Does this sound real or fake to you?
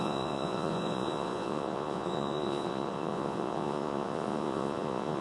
fake